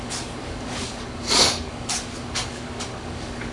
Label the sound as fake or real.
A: fake